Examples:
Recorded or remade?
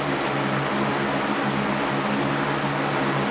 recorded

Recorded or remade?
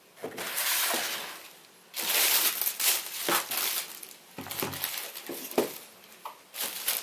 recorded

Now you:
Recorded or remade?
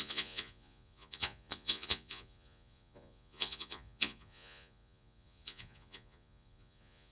remade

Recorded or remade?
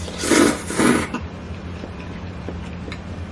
recorded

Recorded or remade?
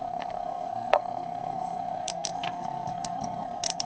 remade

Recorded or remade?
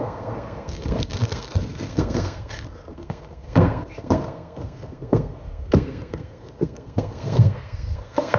remade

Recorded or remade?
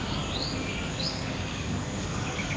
remade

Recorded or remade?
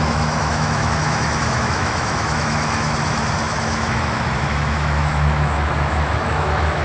remade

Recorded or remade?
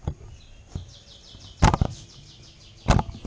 recorded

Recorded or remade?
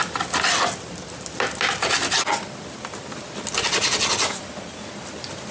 recorded